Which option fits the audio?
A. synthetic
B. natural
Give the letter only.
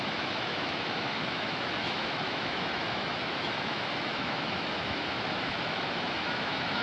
A